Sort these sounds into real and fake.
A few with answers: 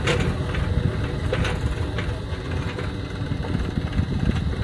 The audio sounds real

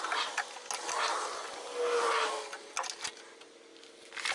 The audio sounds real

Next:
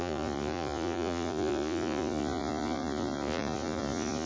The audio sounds fake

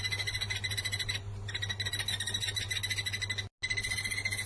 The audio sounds real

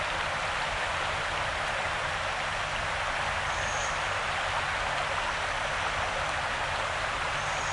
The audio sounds real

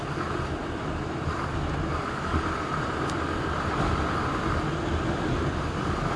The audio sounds real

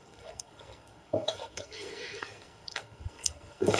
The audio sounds fake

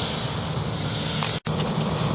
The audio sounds real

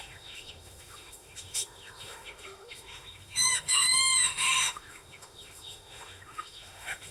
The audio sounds fake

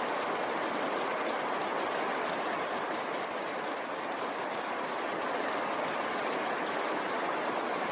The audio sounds real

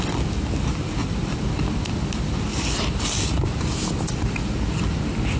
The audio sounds real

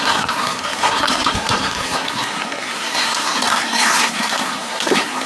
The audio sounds fake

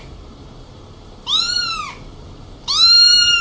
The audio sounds fake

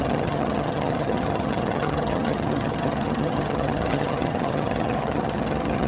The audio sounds fake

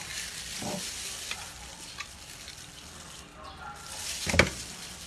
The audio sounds real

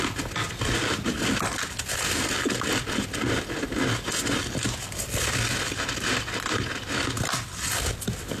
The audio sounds real